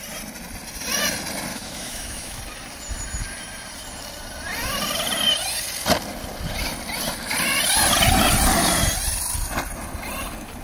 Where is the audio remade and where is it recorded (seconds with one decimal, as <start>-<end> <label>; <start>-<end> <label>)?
0.0-1.5 recorded; 1.5-2.4 remade; 2.4-10.6 recorded